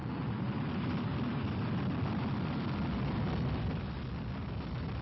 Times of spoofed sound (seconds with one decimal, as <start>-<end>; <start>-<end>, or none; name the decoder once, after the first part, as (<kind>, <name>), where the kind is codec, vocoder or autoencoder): none